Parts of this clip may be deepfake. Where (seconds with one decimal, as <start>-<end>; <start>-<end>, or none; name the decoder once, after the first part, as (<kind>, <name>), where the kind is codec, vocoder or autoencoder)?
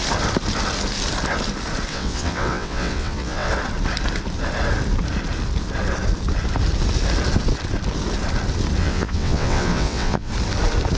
1.9-3.5 (vocoder, WaveNeXt); 8.8-10.3